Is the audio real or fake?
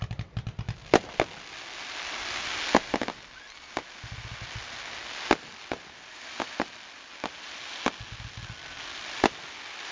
real